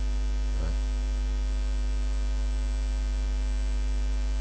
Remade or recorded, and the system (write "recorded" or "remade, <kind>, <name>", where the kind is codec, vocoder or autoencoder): recorded